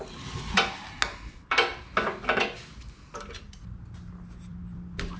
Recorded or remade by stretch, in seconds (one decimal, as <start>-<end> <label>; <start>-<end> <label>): 0.0-4.5 recorded; 4.5-5.2 remade